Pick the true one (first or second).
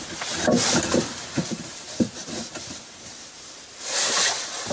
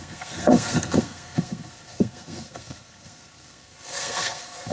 first